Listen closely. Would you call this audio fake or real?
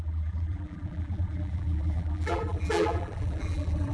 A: fake